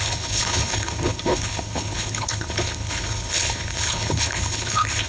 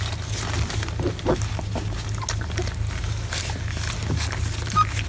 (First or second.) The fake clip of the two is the first